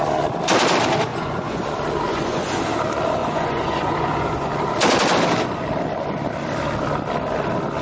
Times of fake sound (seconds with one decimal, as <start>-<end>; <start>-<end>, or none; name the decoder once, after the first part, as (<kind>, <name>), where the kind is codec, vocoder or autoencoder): 1.1-1.6 (vocoder, Vocos); 2.1-2.7; 3.2-4.5